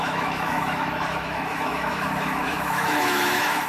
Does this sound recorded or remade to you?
remade